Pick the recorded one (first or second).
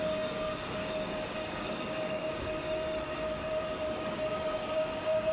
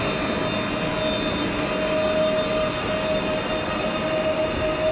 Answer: second